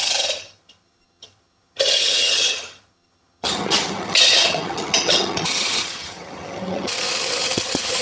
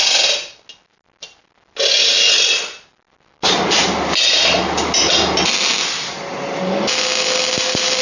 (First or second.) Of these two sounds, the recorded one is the second